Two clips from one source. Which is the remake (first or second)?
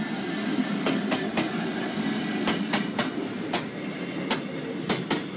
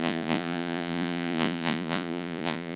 second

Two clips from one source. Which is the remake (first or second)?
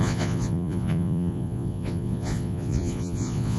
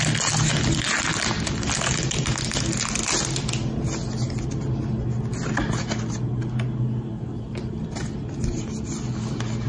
first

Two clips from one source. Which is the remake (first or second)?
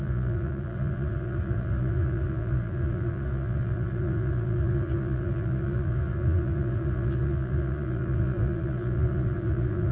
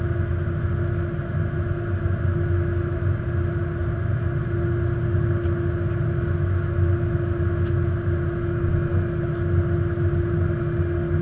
first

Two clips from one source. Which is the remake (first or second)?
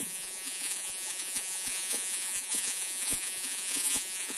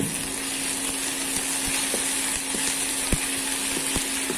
first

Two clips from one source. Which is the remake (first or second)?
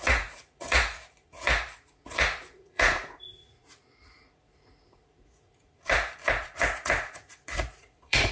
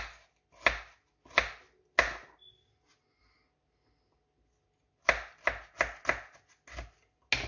first